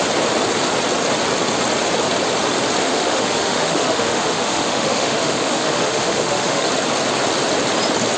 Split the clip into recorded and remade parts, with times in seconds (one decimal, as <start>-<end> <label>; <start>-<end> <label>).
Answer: 0.0-2.8 recorded; 2.8-6.7 remade; 6.7-8.2 recorded